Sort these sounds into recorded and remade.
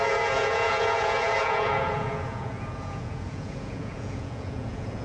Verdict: remade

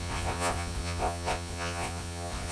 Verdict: remade